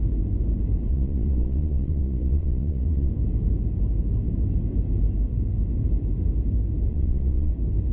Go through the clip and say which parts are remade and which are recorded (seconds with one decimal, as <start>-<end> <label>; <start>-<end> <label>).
0.0-0.9 recorded; 0.9-3.1 remade; 3.1-6.9 recorded; 6.9-7.5 remade; 7.5-7.9 recorded